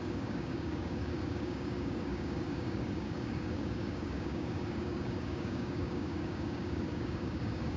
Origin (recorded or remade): remade